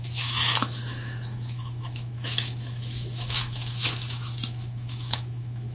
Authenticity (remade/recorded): remade